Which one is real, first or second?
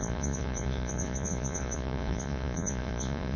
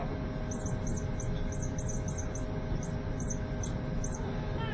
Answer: second